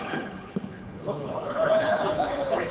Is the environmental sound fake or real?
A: fake